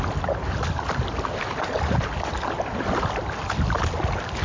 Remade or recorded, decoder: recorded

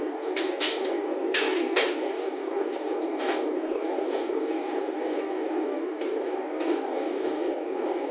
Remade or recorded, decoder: remade, codec, DAC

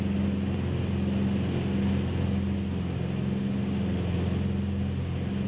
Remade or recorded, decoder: recorded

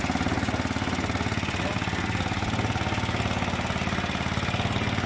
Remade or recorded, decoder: recorded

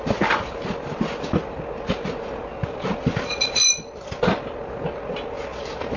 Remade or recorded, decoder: recorded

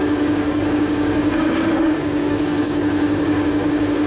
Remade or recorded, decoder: remade, codec, DAC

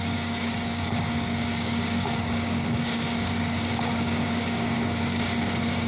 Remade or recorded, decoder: remade, codec, DAC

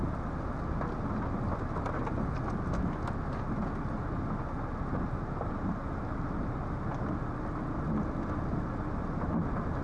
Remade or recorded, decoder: recorded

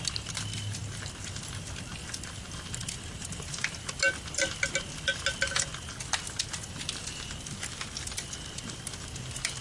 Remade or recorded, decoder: recorded